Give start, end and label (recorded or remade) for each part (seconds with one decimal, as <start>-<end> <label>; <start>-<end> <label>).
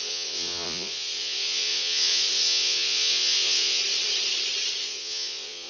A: 0.0-3.8 remade; 3.8-4.8 recorded; 4.8-5.7 remade